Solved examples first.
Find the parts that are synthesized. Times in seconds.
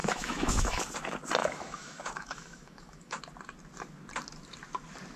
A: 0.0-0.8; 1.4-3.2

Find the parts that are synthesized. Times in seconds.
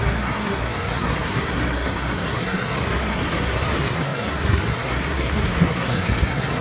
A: 0.0-6.6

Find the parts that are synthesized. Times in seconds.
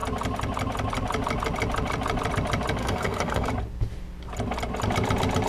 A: 2.8-3.5